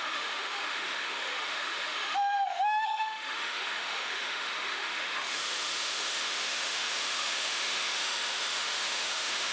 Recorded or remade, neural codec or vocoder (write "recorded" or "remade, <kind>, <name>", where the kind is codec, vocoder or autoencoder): remade, autoencoder, DAC-VAE